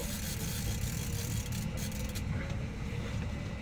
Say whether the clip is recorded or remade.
remade